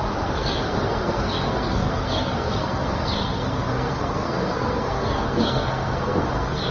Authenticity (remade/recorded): remade